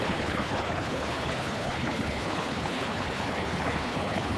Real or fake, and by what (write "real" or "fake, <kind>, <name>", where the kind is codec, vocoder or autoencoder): fake, codec, HILCodec